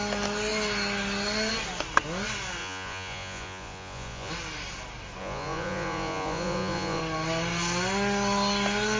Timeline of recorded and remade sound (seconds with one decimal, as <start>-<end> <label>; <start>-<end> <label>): 0.0-2.6 recorded; 2.6-4.3 remade; 4.3-5.2 recorded; 5.2-7.0 remade; 7.0-9.0 recorded